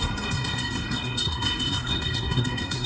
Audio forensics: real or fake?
fake